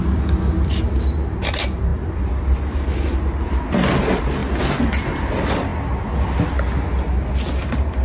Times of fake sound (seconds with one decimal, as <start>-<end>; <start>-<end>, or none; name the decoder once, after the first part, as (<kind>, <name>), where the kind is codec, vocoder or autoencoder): 1.9-2.9 (vocoder, BigVGAN v2)